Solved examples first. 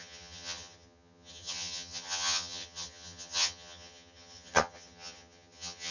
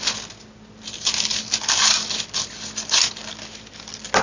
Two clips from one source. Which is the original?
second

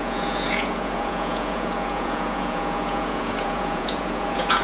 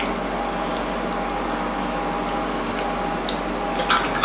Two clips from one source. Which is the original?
second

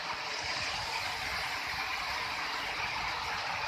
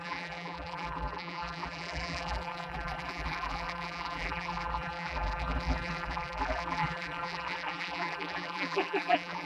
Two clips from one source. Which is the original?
first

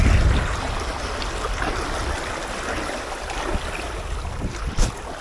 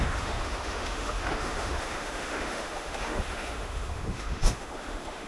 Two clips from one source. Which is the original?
first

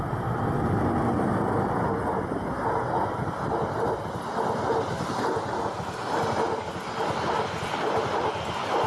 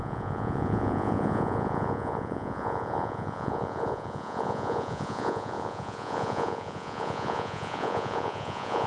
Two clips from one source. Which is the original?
first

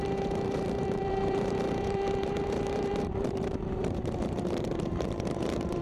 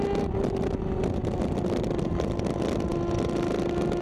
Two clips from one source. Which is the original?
second